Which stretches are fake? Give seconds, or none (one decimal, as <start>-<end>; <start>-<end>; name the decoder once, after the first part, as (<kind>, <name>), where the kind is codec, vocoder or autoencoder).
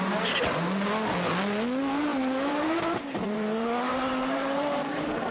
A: 2.1-5.3 (vocoder, BigVGAN v2)